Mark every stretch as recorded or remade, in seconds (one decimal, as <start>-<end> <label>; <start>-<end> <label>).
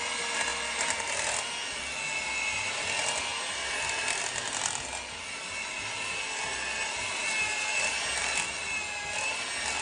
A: 0.0-9.8 recorded